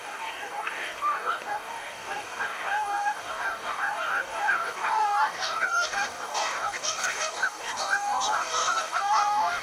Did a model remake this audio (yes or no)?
yes